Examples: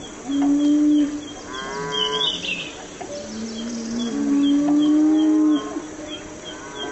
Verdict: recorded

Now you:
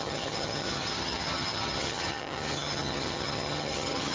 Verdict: remade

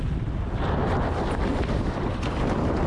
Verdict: recorded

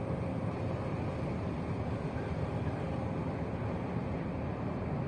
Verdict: recorded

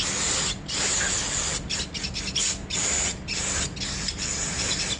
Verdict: recorded